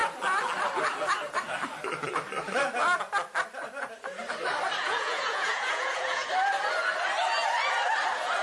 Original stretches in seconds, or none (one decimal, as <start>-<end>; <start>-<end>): 0.0-4.8; 6.3-8.4